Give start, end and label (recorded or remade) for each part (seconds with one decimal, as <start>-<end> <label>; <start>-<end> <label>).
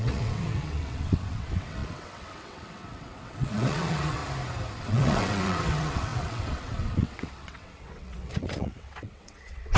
0.0-4.2 remade; 4.2-4.8 recorded; 4.8-9.8 remade